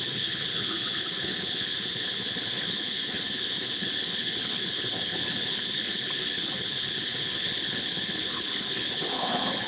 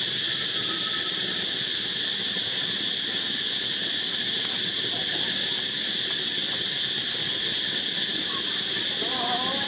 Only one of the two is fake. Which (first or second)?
first